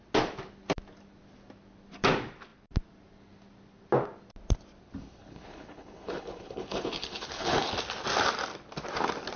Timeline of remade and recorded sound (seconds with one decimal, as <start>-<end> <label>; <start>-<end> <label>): 0.0-5.0 recorded; 5.0-7.7 remade; 7.7-9.4 recorded